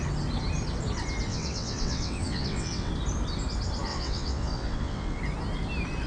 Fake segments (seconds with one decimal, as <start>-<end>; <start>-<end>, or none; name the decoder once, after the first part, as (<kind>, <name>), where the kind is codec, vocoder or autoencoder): 1.3-2.9 (vocoder, WaveNeXt); 3.9-5.2